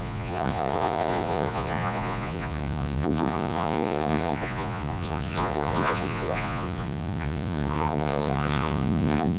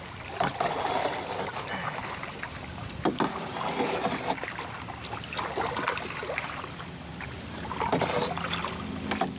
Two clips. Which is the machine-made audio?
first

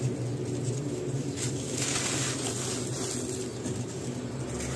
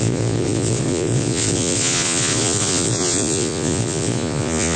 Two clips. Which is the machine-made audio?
second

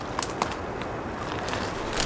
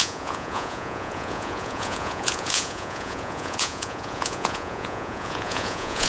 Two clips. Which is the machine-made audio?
second